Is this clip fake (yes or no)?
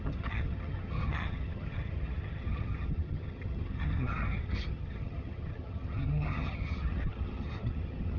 yes